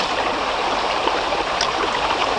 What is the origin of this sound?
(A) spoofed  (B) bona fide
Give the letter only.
A